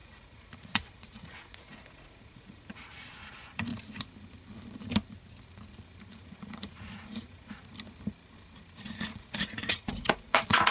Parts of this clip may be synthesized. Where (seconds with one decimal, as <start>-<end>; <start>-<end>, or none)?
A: 0.0-3.7; 6.1-7.7; 8.8-10.7